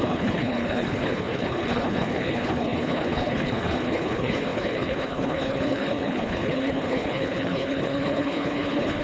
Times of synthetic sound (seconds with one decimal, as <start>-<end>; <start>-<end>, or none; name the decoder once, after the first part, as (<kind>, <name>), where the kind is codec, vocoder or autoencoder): 0.0-9.0 (codec, HILCodec)